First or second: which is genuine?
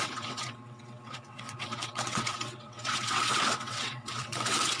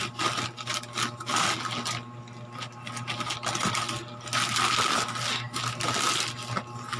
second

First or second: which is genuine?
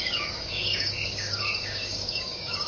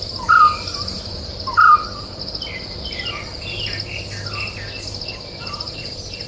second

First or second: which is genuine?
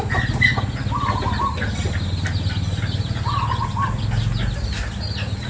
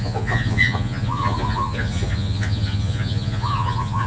first